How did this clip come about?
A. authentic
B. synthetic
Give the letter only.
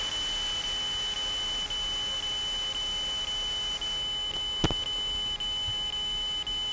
A